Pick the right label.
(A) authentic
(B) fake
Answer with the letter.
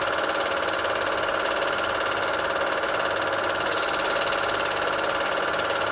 A